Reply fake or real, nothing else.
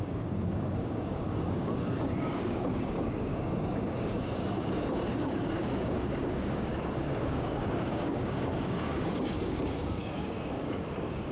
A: fake